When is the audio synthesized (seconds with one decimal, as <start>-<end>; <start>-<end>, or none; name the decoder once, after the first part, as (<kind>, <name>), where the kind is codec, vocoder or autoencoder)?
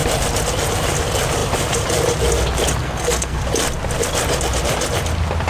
2.8-3.4 (codec, SNAC)